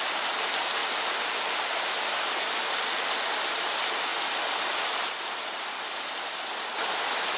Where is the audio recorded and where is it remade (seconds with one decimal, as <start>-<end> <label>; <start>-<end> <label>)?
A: 0.0-7.4 recorded